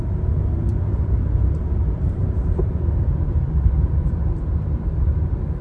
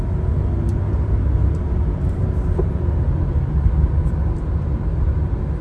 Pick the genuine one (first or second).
second